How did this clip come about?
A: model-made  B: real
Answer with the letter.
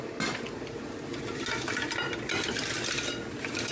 B